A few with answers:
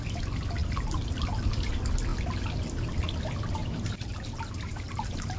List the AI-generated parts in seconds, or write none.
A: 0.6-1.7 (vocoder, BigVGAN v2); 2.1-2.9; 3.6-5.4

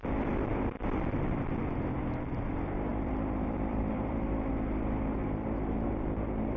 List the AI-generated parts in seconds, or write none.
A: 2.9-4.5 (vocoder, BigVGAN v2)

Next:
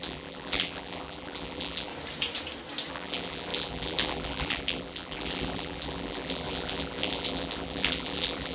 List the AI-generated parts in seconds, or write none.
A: 0.0-1.9 (vocoder, BigVGAN v2); 2.9-8.5

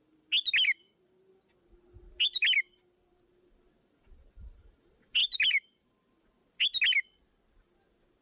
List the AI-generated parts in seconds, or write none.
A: 5.2-5.9 (vocoder, BigVGAN v2)

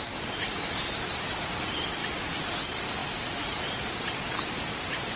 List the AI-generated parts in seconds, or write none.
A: 0.0-2.0 (vocoder, BigVGAN v2); 2.6-5.2